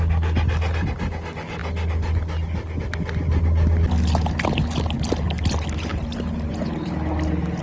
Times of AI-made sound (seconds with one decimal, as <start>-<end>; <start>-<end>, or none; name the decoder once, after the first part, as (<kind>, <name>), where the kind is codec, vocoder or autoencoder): none